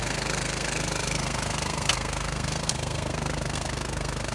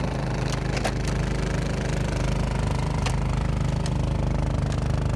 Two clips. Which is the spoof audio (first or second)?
first